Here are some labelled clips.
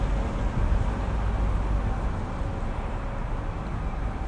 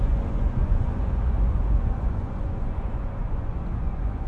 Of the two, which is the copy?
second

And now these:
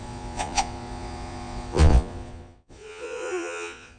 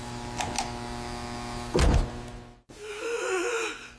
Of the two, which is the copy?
first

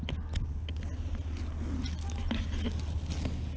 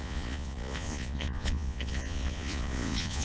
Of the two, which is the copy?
second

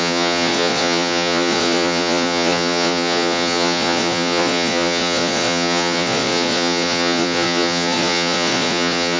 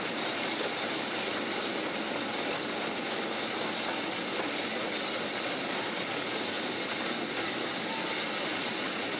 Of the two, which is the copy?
first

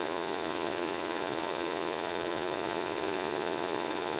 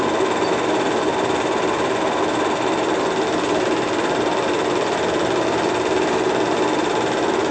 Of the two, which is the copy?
first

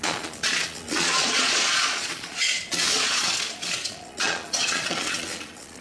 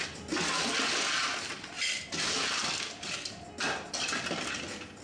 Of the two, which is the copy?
first